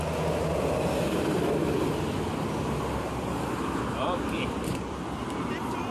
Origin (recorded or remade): remade